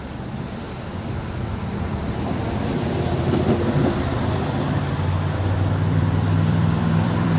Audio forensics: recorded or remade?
remade